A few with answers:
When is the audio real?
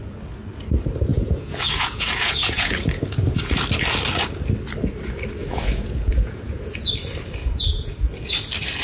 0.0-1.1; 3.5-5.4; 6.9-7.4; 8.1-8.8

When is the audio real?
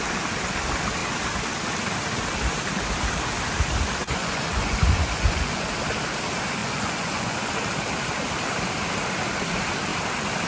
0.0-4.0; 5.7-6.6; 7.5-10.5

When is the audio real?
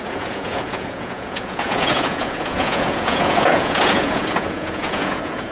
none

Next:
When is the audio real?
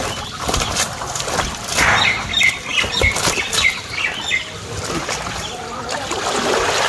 0.0-6.9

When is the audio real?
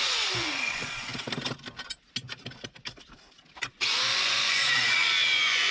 1.1-3.7